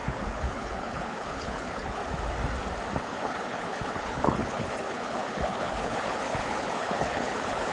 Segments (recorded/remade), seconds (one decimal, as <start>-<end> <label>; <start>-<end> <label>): 0.0-2.0 remade; 2.0-3.0 recorded; 3.0-7.7 remade